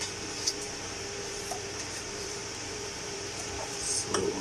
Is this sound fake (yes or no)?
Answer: yes